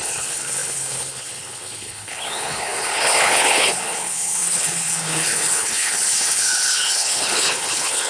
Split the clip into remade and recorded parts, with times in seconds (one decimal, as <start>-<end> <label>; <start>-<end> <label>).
0.0-8.1 remade